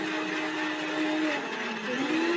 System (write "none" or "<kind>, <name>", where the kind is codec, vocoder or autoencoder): none